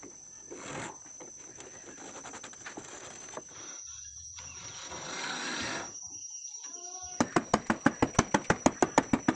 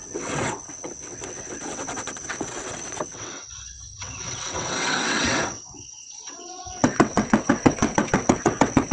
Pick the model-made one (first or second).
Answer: second